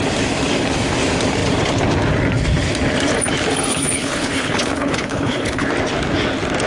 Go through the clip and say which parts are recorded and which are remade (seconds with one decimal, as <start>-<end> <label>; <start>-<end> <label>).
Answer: 0.0-3.7 recorded; 3.7-5.7 remade; 5.7-6.7 recorded